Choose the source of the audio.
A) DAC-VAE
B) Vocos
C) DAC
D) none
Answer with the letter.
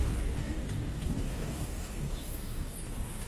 C